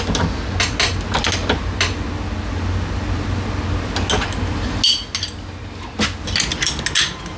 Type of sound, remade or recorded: recorded